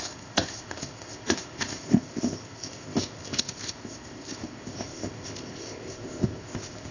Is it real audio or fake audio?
fake